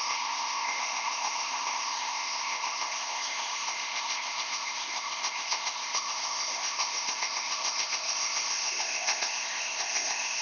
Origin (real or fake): fake